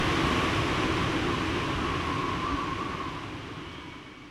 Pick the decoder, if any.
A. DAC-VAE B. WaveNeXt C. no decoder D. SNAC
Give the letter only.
C